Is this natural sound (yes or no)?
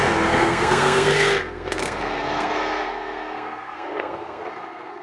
no